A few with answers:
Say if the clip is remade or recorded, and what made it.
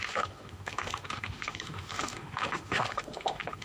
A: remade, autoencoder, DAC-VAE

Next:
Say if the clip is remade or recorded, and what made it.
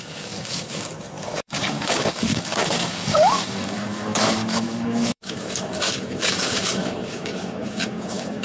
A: remade, codec, DAC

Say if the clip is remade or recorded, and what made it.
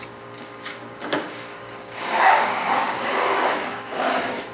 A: remade, codec, DAC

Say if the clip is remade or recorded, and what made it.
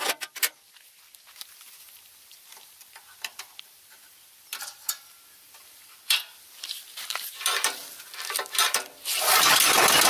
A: remade, vocoder, BigVGAN v2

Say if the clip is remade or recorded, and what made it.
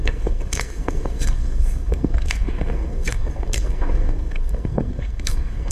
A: remade, codec, SNAC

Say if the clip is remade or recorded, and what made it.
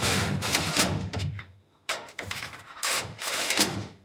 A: remade, autoencoder, DAC-VAE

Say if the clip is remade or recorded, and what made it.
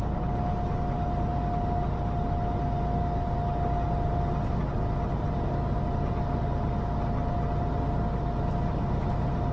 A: recorded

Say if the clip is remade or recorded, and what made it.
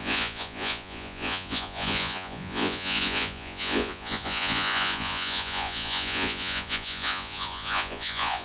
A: remade, vocoder, Vocos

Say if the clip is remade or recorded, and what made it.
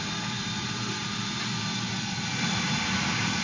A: recorded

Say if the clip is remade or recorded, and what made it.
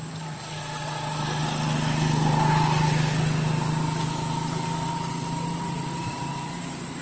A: recorded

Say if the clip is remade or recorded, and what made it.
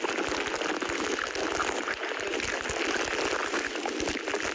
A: recorded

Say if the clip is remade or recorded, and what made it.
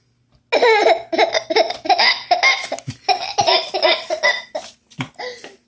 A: recorded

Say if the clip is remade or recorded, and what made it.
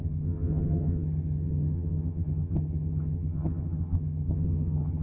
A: remade, vocoder, HiFi-GAN